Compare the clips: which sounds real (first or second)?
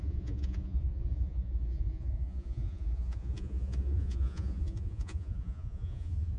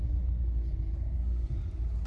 second